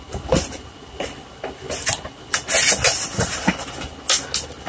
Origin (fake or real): real